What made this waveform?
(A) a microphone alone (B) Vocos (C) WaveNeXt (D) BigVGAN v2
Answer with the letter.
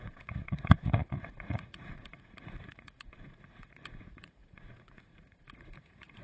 B